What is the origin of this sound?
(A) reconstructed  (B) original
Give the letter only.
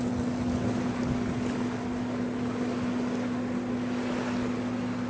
B